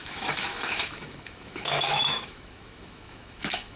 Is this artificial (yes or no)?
yes